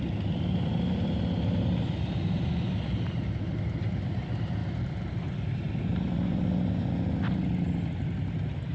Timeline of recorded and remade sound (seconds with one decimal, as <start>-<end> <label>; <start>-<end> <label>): 0.0-8.7 recorded